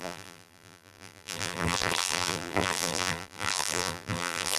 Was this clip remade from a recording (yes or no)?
yes